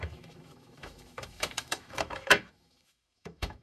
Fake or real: fake